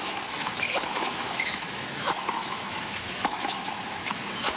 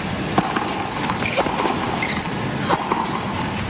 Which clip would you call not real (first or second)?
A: first